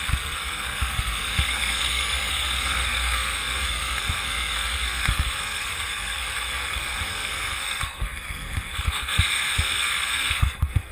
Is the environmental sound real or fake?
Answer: fake